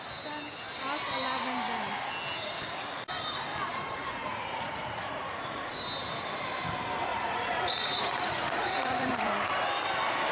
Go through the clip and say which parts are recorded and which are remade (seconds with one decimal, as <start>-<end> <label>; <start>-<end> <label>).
0.0-3.7 recorded; 3.7-5.7 remade; 5.7-7.1 recorded; 7.1-9.3 remade; 9.3-10.3 recorded